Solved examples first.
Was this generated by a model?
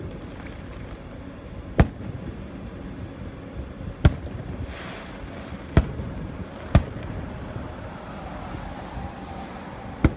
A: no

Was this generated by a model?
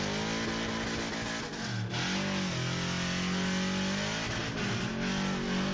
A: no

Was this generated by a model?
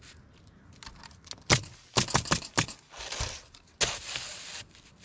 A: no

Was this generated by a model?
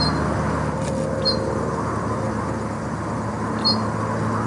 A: no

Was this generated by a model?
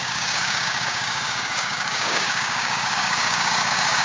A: yes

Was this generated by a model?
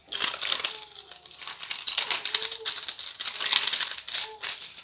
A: no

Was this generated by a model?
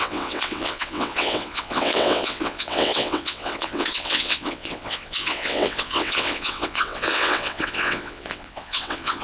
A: yes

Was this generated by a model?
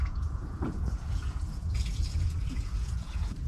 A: yes